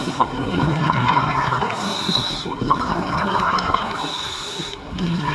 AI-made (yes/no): yes